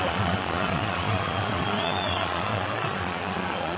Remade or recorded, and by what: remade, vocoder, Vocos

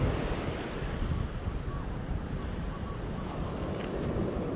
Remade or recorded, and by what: recorded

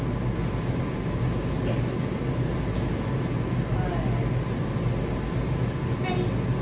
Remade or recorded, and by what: recorded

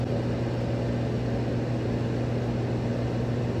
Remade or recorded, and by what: recorded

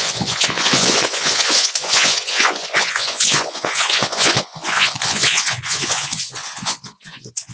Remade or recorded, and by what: remade, vocoder, Vocos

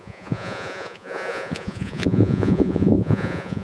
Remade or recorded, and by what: remade, vocoder, Vocos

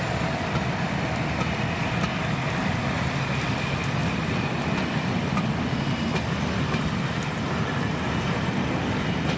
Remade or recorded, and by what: recorded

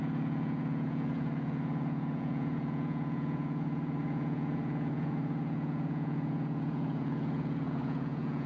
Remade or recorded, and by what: remade, vocoder, Vocos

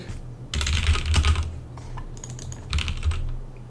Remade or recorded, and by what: recorded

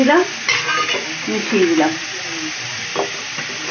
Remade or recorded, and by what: recorded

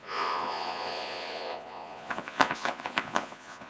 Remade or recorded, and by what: remade, vocoder, Vocos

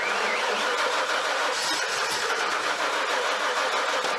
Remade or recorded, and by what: recorded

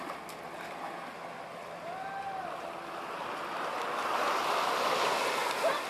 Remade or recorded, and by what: recorded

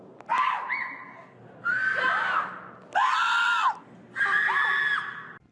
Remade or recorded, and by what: recorded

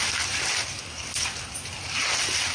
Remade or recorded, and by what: recorded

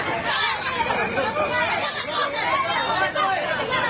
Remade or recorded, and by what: recorded